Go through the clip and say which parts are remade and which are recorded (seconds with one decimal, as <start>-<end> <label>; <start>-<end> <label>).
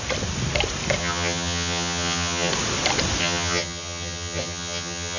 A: 0.0-1.0 recorded; 1.0-2.5 remade; 2.5-3.2 recorded; 3.2-5.2 remade